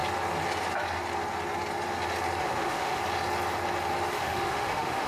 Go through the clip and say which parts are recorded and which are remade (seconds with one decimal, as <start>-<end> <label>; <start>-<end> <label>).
0.0-2.4 recorded; 2.4-3.0 remade; 3.0-4.1 recorded; 4.1-5.1 remade